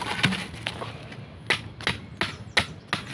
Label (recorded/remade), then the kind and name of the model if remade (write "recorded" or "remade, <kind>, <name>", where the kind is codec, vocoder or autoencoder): recorded